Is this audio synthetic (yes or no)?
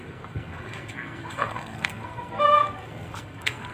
yes